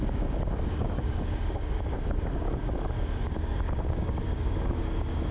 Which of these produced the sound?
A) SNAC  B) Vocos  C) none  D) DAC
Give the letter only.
D